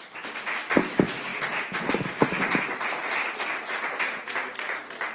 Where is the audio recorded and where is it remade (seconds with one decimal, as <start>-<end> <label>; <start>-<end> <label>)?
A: 0.0-5.1 recorded